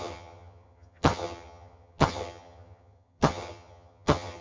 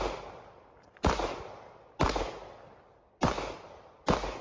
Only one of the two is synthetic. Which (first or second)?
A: first